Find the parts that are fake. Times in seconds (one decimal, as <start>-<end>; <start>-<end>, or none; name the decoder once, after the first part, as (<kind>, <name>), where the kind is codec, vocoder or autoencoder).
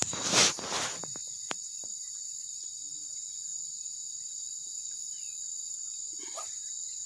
0.0-7.1 (vocoder, BigVGAN v2)